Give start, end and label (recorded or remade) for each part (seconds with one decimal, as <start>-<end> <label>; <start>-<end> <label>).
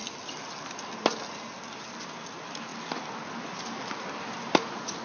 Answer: 0.0-5.0 recorded